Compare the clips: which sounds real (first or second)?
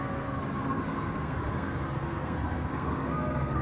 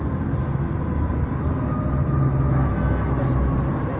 second